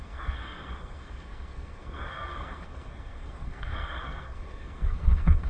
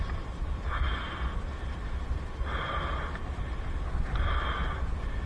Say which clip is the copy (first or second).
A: first